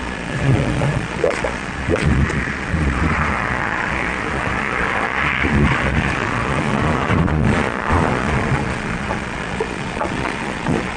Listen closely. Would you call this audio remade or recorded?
remade